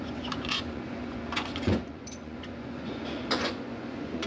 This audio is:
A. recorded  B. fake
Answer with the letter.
B